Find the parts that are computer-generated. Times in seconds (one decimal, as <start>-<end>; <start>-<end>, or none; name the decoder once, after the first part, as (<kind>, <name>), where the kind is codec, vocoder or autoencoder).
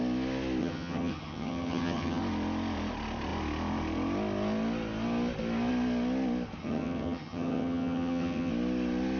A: 0.6-2.2 (vocoder, HiFi-GAN); 6.6-8.5